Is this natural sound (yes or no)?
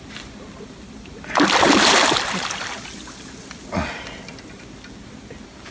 yes